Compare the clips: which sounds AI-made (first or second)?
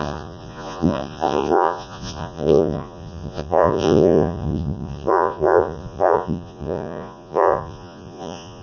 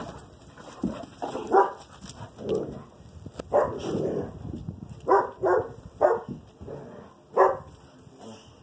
first